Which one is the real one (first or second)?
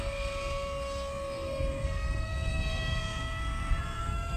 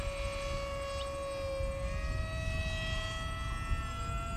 second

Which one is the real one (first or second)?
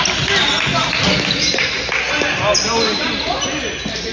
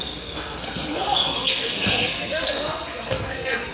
first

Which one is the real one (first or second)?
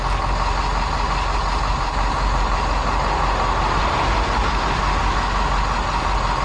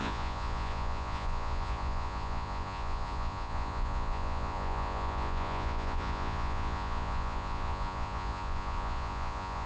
first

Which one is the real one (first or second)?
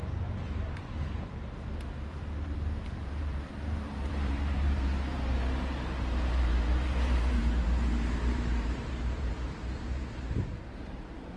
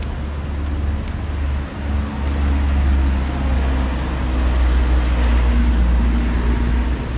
second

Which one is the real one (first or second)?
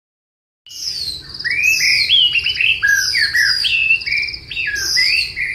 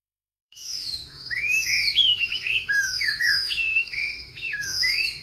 first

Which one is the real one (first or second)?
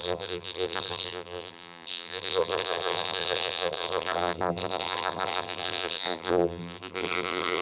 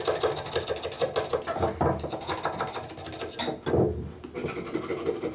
second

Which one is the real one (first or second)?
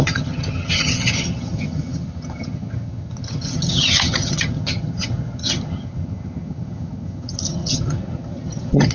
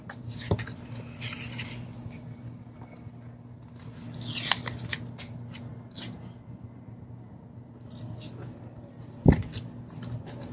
second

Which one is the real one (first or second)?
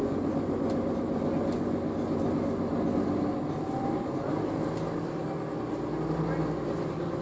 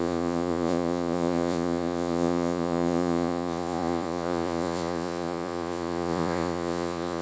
first